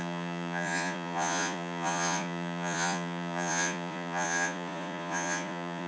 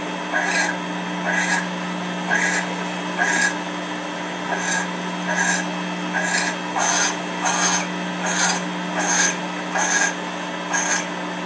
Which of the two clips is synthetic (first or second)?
first